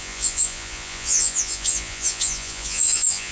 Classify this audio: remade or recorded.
remade